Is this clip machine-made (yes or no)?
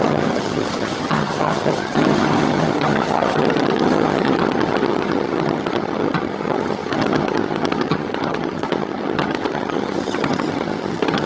yes